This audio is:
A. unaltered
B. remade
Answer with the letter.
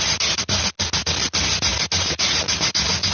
A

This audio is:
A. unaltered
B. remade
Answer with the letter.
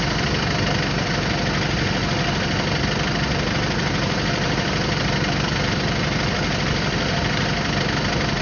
A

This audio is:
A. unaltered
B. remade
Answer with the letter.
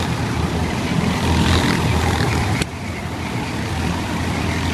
A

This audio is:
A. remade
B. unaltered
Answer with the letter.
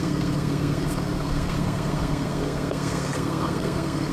A